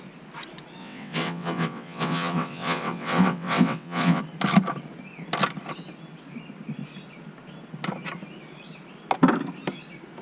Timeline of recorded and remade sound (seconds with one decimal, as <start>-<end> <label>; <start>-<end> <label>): 0.0-0.8 recorded; 0.8-4.2 remade; 4.2-10.2 recorded